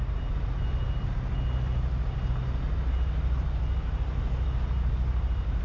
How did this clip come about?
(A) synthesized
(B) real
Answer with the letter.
B